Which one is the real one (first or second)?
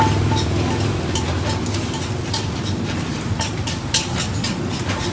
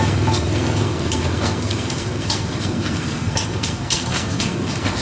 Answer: first